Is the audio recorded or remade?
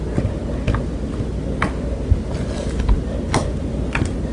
recorded